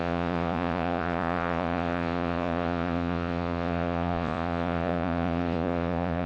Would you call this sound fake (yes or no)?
yes